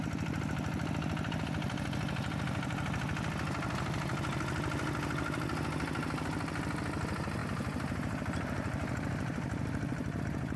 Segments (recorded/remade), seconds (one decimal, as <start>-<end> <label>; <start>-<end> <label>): 0.0-7.4 recorded; 7.4-10.2 remade; 10.2-10.6 recorded